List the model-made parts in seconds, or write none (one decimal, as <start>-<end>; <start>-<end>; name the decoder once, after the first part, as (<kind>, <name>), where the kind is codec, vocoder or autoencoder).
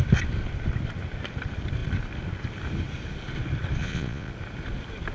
3.8-4.3 (vocoder, Vocos)